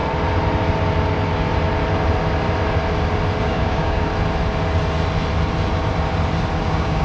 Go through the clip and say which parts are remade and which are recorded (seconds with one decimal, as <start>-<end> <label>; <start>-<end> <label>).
0.0-3.4 recorded; 3.4-4.1 remade; 4.1-6.6 recorded; 6.6-7.0 remade